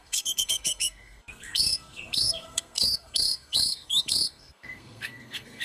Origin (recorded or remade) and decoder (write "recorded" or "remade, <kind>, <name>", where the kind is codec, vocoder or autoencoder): remade, codec, SNAC